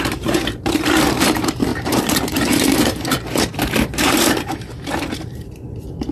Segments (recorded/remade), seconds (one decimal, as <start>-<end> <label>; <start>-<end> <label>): 0.0-6.1 remade